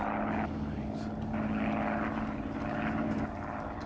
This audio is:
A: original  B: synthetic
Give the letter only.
A